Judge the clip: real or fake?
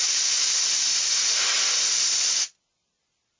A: fake